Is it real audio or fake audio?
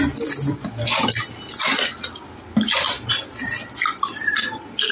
real